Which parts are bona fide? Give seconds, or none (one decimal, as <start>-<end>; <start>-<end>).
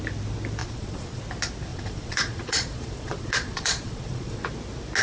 0.0-0.6; 1.2-1.7; 4.4-5.0